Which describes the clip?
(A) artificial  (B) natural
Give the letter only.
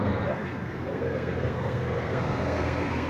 A